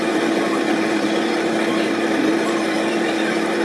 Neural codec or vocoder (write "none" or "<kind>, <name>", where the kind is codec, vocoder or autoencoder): vocoder, BigVGAN v2